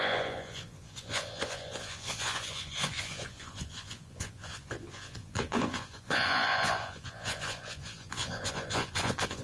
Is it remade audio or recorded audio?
remade